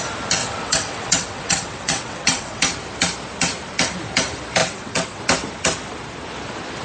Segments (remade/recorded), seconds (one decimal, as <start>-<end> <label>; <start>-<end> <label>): 0.0-0.4 recorded; 0.4-2.6 remade; 2.6-4.6 recorded; 4.6-5.2 remade; 5.2-6.8 recorded